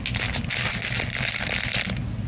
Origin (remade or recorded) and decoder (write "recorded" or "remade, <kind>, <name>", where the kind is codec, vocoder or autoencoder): recorded